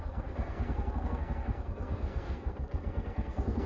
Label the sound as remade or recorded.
remade